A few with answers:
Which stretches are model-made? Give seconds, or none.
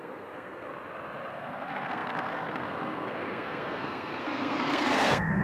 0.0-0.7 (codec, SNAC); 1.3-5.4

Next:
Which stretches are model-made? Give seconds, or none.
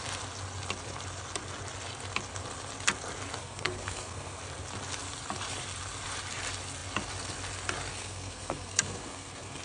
3.4-4.4 (codec, SNAC); 7.9-9.6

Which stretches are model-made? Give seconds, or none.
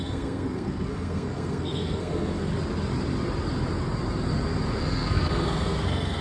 0.0-2.5 (codec, SNAC); 4.8-6.2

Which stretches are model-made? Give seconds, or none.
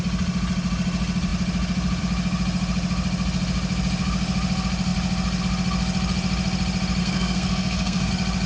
7.0-8.1 (codec, SNAC)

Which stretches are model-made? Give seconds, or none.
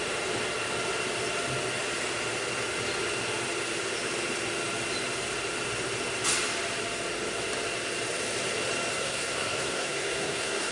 8.9-10.7 (codec, SNAC)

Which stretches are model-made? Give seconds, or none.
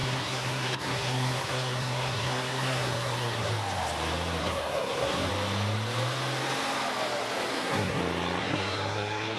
0.0-3.5 (codec, SNAC); 4.4-5.3; 7.5-8.0; 8.4-9.4